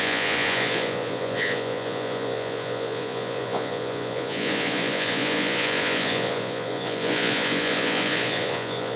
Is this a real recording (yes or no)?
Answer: no